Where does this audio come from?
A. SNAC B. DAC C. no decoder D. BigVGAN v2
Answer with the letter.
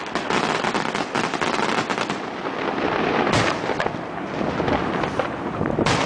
C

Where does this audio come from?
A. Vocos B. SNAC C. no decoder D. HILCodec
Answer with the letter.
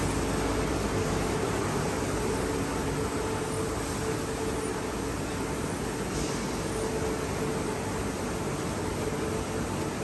C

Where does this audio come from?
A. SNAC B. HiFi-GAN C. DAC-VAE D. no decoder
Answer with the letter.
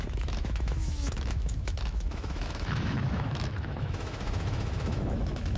C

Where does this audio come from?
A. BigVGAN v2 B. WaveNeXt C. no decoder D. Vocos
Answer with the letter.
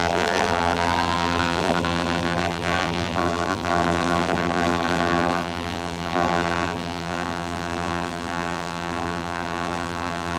A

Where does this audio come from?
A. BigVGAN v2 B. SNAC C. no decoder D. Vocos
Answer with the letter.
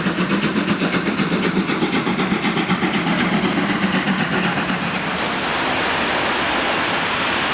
A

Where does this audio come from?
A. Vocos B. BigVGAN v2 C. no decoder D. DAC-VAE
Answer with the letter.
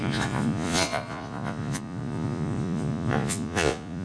A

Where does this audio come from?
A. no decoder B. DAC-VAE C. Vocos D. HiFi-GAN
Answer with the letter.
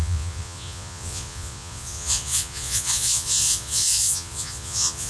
C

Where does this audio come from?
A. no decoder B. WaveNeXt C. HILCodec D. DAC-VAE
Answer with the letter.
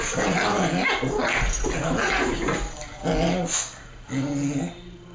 A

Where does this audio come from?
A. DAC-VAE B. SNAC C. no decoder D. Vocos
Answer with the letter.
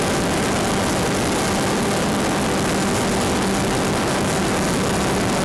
C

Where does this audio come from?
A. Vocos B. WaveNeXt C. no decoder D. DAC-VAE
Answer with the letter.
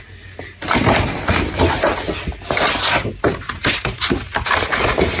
C